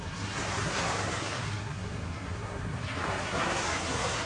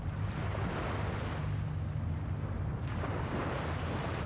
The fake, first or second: first